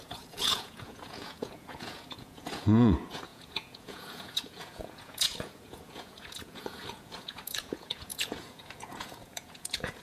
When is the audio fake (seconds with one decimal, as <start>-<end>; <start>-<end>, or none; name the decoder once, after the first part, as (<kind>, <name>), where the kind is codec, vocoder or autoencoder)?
0.0-10.0 (vocoder, Vocos)